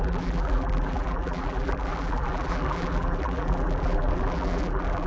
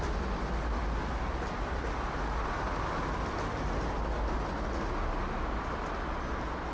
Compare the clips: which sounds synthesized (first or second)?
first